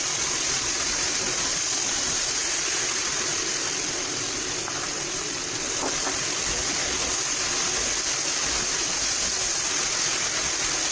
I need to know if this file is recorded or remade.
recorded